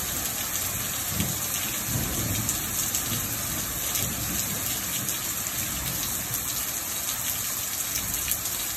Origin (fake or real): real